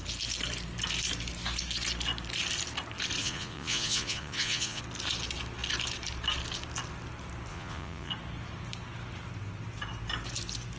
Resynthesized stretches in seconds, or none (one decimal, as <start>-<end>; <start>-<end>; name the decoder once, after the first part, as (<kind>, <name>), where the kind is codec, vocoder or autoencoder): 3.2-4.8 (vocoder, Vocos); 7.5-8.1